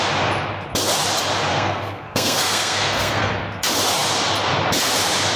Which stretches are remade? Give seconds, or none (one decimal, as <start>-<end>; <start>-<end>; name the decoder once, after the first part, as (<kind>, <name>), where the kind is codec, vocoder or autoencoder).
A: 1.5-3.3 (codec, SNAC)